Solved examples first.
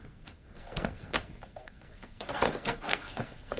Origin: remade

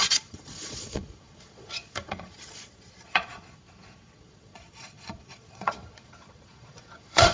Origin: remade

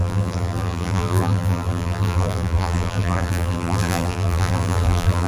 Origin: remade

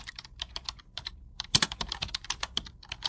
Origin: remade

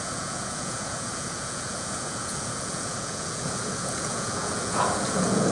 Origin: remade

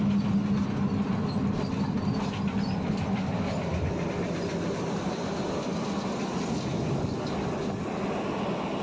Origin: recorded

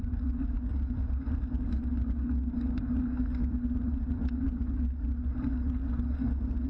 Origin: recorded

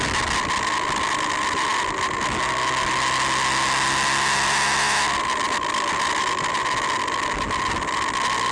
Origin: recorded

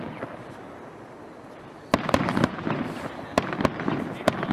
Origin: recorded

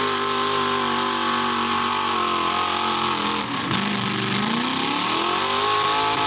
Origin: recorded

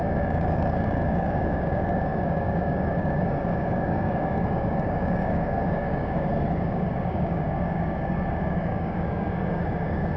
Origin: remade